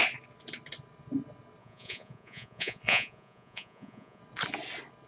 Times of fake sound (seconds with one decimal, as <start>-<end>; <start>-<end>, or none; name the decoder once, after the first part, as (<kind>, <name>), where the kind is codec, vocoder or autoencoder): 1.6-4.2 (vocoder, Vocos)